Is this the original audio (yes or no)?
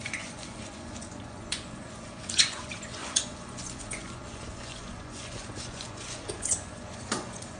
no